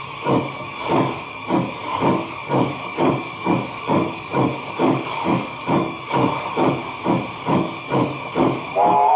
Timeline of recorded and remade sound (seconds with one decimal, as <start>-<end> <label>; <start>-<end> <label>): 0.0-6.8 remade; 6.8-7.4 recorded; 7.4-9.2 remade

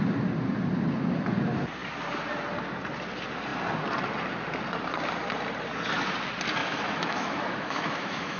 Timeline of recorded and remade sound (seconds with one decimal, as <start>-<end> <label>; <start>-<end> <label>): 0.0-6.6 recorded; 6.6-8.4 remade

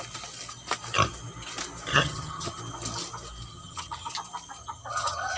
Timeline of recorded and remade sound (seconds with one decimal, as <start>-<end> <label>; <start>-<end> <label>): 0.0-1.9 recorded; 1.9-2.6 remade; 2.6-3.5 recorded; 3.5-4.1 remade; 4.1-4.6 recorded; 4.6-5.4 remade

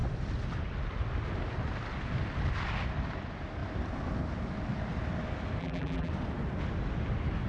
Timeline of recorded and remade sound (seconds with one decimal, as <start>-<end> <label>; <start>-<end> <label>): 0.0-5.6 recorded; 5.6-6.1 remade; 6.1-7.5 recorded

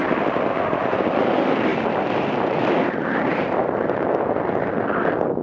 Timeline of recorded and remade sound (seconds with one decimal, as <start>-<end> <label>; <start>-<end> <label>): 0.0-1.7 recorded; 1.7-4.1 remade; 4.1-5.4 recorded

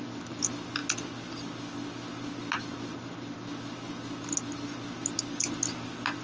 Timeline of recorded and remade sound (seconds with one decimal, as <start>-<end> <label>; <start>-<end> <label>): 0.0-6.2 recorded

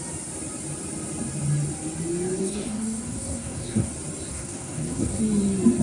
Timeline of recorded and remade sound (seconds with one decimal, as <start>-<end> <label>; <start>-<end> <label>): 0.0-2.4 recorded; 2.4-3.9 remade; 3.9-4.3 recorded; 4.3-5.2 remade; 5.2-5.8 recorded